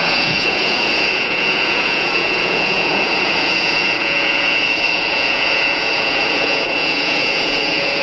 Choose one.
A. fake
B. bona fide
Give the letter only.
A